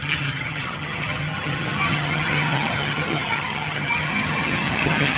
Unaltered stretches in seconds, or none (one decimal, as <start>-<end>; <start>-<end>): none